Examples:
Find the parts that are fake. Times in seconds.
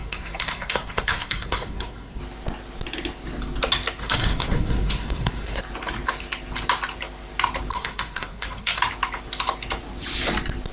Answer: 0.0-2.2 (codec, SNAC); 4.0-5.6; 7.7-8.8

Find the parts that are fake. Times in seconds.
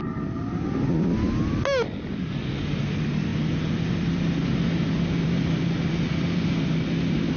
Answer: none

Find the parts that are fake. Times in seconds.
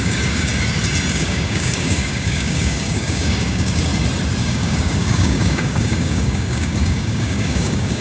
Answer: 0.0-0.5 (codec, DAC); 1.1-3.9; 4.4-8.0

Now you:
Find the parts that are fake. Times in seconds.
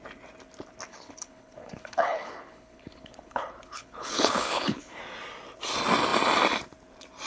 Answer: 0.9-5.0 (codec, HILCodec)